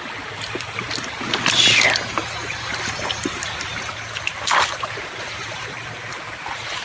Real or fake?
fake